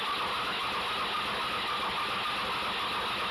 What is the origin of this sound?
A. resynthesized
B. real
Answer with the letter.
B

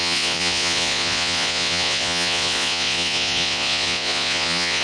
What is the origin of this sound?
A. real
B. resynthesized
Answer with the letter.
B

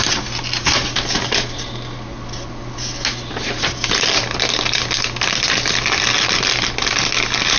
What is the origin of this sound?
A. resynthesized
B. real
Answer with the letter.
B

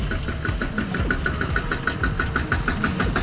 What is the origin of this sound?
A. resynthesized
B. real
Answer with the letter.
B